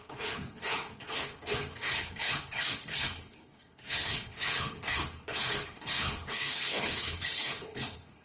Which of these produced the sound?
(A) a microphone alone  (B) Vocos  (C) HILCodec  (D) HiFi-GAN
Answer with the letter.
C